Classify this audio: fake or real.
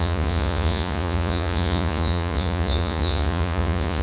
fake